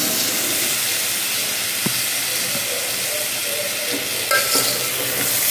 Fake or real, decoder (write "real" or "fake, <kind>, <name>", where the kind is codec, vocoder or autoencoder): real